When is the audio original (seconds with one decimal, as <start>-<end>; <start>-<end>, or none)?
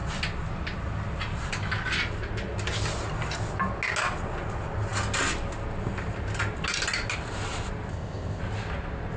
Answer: 0.0-7.9; 8.4-9.2